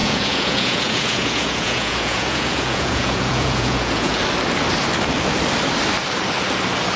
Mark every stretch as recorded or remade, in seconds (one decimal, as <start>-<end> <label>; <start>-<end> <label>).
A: 0.0-4.2 remade; 4.2-7.0 recorded